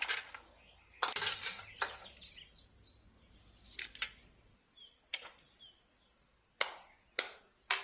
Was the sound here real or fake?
real